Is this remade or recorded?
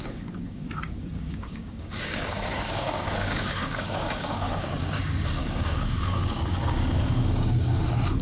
remade